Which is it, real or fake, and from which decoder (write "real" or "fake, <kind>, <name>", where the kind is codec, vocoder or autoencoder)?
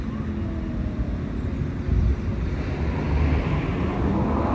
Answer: real